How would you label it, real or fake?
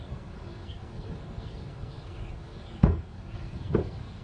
fake